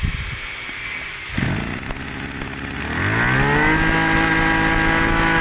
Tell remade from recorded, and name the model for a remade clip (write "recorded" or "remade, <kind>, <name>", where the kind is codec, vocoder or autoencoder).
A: recorded